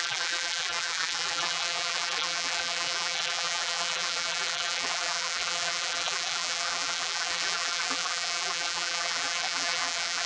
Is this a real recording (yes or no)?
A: no